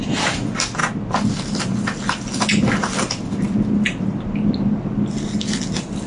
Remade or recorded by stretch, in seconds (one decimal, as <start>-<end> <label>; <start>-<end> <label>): 0.0-6.1 recorded